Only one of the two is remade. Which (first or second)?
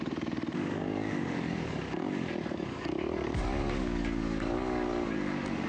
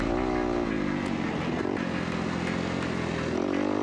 first